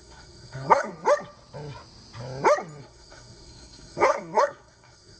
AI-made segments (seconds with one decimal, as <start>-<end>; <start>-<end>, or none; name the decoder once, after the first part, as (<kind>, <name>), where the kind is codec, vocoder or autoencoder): 0.0-0.9 (codec, SNAC); 2.8-5.2